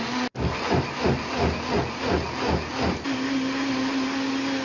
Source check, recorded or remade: recorded